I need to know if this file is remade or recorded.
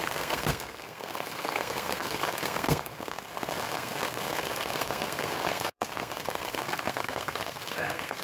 remade